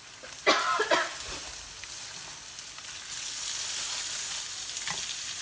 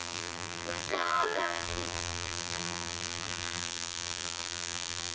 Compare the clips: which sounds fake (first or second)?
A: second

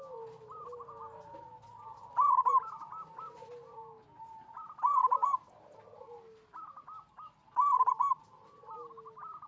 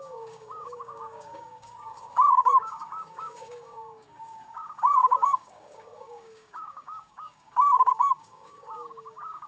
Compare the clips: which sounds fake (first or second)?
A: second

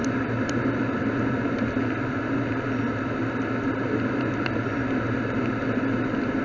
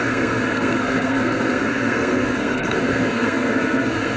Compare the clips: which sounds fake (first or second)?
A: second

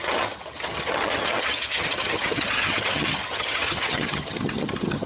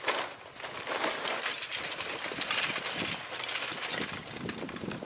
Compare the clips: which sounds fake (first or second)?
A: first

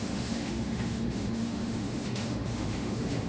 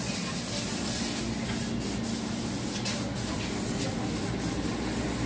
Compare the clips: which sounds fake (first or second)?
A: first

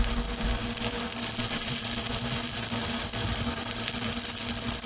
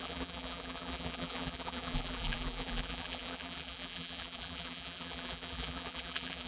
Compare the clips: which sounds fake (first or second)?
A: second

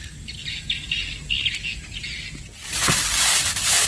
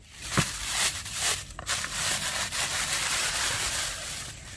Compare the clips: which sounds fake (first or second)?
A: second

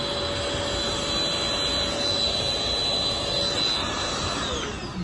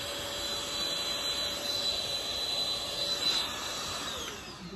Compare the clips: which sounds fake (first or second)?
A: second